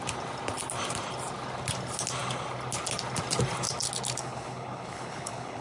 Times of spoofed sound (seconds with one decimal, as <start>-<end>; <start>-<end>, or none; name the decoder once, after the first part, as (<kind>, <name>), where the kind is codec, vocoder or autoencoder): 4.2-5.6 (codec, HILCodec)